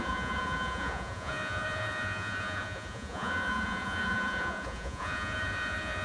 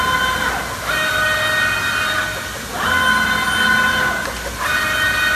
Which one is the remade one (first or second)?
first